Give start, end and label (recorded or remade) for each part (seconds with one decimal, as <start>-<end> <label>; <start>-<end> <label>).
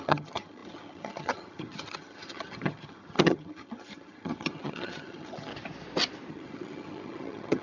0.0-5.5 remade; 5.5-6.3 recorded; 6.3-7.6 remade